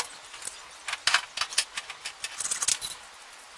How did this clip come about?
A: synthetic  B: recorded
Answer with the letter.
B